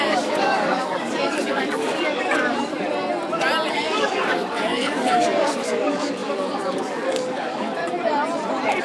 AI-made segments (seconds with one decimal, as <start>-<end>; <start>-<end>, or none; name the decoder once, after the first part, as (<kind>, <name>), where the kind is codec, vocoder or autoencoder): 0.0-2.7 (codec, DAC); 3.7-7.8